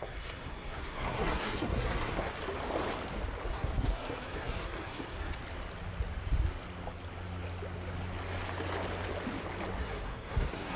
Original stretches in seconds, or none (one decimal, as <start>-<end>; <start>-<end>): 2.3-3.5; 5.4-9.8